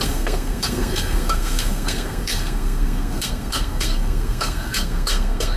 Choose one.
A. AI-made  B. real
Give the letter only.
A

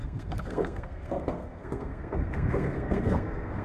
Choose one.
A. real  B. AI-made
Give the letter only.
B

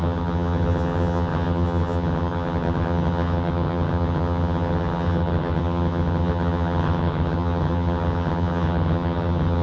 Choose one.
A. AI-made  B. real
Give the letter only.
A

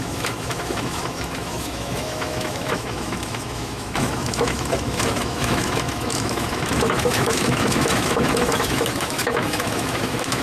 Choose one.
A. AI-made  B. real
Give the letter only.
A